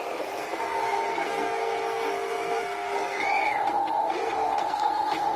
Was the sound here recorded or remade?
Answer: remade